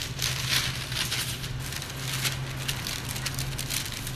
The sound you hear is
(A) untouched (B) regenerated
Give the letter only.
A